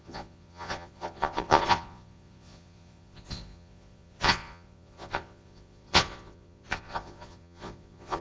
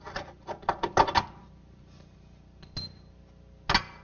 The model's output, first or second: first